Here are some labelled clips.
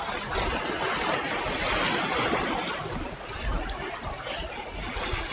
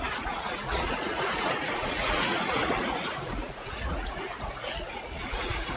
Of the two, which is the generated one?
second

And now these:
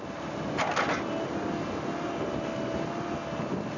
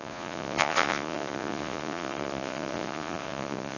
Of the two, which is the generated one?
second